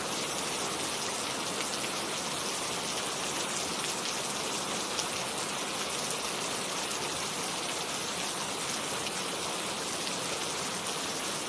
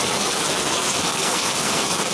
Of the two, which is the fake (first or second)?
second